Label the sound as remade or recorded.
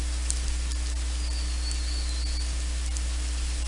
recorded